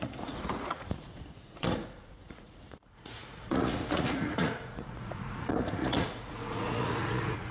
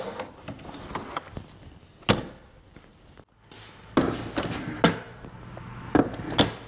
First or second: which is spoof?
first